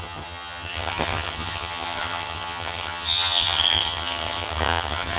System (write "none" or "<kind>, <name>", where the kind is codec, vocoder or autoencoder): vocoder, HiFi-GAN